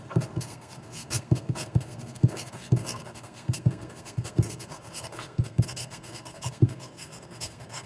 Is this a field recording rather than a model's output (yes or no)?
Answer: no